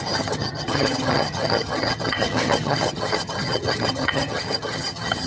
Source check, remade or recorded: remade